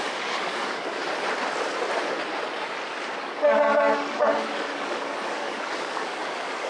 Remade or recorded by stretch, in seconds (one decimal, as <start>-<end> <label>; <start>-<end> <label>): 0.0-1.0 remade; 1.0-3.2 recorded; 3.2-6.7 remade